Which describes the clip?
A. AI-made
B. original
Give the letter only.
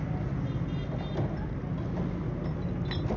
B